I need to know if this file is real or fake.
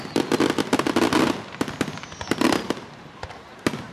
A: real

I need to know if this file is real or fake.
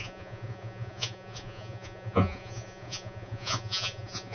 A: fake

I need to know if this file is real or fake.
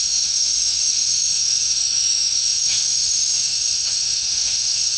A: fake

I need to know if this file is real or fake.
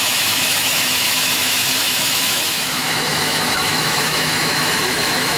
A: fake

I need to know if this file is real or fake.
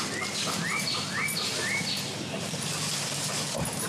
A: real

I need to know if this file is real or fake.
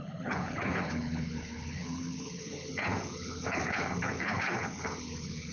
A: fake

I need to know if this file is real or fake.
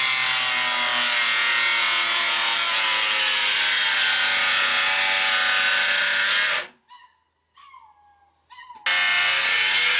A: real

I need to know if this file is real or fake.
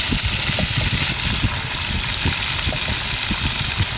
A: real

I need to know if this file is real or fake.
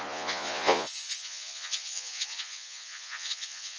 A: fake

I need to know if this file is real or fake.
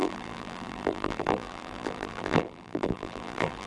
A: fake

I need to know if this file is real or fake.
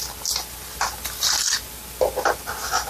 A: real